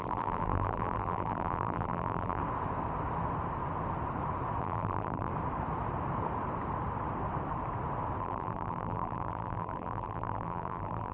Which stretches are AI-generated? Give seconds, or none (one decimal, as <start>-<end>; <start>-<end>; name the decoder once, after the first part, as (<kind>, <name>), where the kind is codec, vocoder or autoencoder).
0.0-2.4 (vocoder, BigVGAN v2); 4.6-5.3; 8.2-11.1